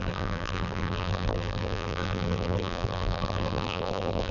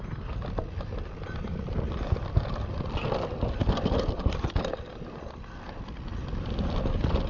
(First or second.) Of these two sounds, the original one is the second